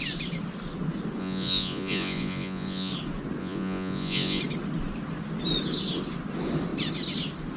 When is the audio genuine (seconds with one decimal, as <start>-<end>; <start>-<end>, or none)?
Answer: 0.0-1.2; 2.9-3.4; 4.4-7.6